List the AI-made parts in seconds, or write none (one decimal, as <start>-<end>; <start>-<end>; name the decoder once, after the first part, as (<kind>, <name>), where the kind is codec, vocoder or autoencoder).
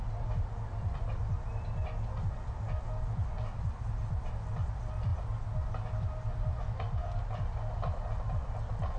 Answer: none